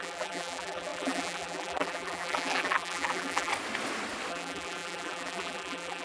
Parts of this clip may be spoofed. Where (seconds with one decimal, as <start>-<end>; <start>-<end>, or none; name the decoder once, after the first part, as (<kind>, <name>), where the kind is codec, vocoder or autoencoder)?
0.0-3.5 (vocoder, BigVGAN v2); 4.3-6.0